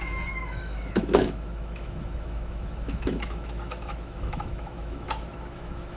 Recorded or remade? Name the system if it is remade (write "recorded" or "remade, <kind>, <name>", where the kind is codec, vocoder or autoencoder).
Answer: remade, autoencoder, DAC-VAE